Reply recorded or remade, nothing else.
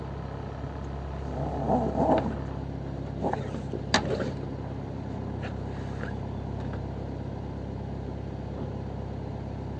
recorded